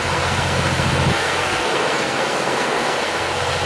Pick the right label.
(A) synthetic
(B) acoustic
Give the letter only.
A